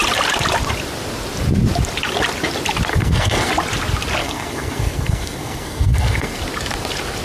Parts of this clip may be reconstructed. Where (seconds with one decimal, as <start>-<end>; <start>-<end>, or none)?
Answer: 2.9-3.5; 4.2-6.4